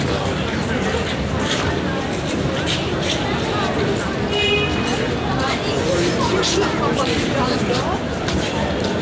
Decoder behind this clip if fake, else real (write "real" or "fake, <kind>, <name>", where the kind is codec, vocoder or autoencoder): real